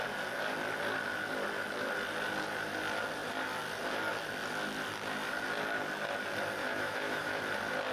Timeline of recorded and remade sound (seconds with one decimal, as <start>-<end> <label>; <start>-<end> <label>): 0.0-6.6 recorded; 6.6-7.4 remade; 7.4-7.9 recorded